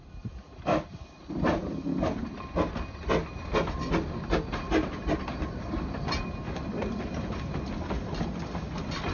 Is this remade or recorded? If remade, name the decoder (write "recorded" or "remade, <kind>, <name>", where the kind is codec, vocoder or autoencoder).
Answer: recorded